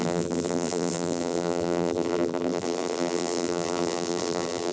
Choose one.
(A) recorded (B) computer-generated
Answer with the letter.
B